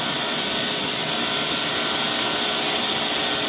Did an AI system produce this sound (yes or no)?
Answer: no